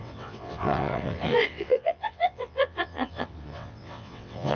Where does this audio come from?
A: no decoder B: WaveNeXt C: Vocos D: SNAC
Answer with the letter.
B